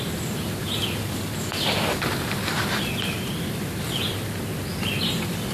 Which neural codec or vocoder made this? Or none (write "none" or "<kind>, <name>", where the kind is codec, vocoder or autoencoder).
vocoder, BigVGAN v2